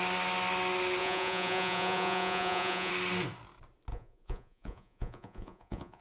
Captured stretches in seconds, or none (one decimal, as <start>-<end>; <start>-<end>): 0.0-1.0; 2.9-3.9